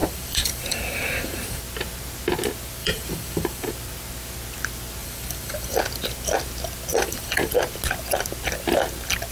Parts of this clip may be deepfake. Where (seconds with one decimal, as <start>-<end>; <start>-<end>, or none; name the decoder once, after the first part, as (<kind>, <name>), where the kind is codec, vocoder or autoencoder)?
0.0-1.6 (vocoder, BigVGAN v2); 2.8-3.7; 5.0-5.8; 6.9-7.5